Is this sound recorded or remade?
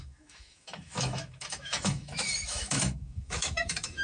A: remade